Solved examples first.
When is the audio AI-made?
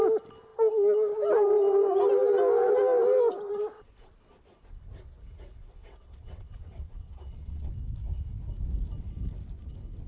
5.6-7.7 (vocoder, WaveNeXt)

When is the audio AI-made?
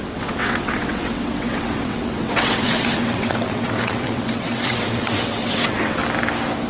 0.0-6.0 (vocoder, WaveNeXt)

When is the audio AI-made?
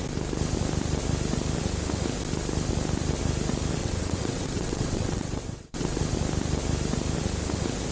3.8-6.0 (vocoder, WaveNeXt)